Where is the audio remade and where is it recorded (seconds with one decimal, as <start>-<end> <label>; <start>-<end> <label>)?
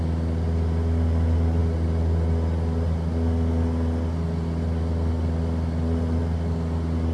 0.0-7.1 recorded